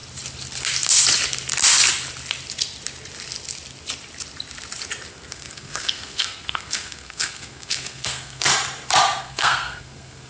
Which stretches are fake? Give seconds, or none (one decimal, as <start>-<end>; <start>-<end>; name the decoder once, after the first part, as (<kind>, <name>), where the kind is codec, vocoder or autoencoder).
5.1-8.5 (codec, SNAC); 9.2-10.3